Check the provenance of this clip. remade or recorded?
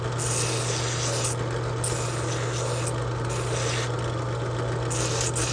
recorded